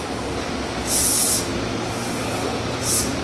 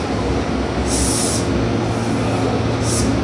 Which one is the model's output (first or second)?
first